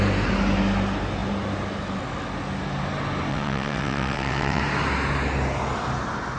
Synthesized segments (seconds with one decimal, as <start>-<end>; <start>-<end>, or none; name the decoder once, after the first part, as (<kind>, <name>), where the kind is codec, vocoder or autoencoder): 3.3-4.6 (vocoder, WaveNeXt)